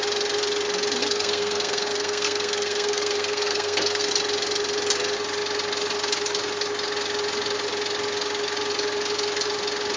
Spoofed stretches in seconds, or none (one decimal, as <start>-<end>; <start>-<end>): 1.0-4.1